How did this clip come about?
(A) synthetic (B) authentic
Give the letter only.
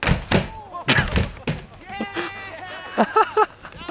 B